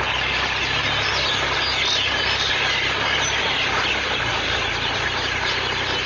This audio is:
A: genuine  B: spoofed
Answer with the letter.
A